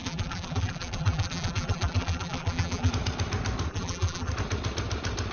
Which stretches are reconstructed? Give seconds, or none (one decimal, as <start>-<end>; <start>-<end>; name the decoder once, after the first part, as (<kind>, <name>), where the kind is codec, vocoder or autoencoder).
0.0-2.9 (vocoder, BigVGAN v2); 3.7-4.3